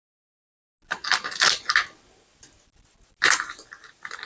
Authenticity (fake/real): real